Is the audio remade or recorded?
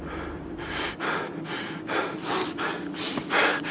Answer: recorded